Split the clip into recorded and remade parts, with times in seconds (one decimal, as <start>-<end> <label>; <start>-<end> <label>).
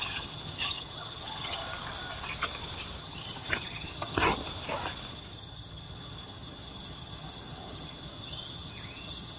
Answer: 0.0-1.6 remade; 1.6-3.0 recorded; 3.0-4.4 remade; 4.4-5.1 recorded; 5.1-9.4 remade